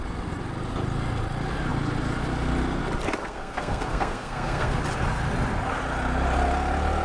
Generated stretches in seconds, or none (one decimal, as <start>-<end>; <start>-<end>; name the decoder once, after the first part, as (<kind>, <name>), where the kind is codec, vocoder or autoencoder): 3.2-4.8 (codec, SNAC)